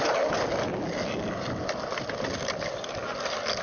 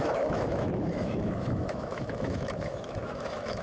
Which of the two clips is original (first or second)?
first